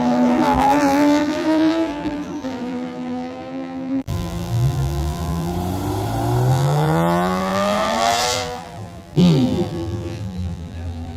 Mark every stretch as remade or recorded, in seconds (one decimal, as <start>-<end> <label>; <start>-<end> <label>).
0.0-5.5 remade; 5.5-6.5 recorded; 6.5-11.2 remade